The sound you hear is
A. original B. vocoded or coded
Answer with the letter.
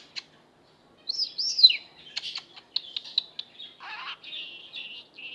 A